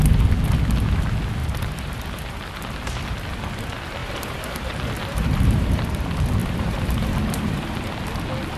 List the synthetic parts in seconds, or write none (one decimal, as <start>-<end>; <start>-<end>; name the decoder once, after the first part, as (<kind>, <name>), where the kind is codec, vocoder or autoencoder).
1.4-2.4 (vocoder, BigVGAN v2); 4.0-5.8; 6.4-7.6